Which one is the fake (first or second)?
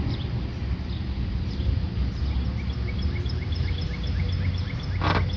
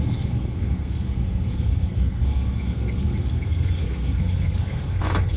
second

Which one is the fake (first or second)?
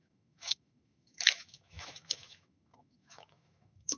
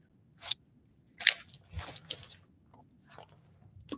first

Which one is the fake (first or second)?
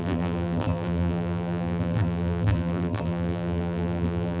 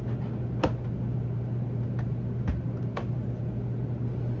first